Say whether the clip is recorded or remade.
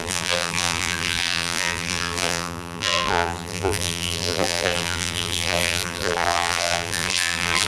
remade